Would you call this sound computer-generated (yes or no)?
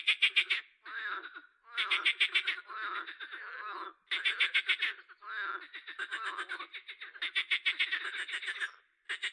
no